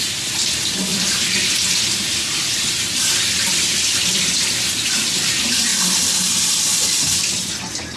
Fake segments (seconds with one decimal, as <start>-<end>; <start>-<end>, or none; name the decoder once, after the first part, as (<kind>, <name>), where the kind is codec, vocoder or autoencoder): none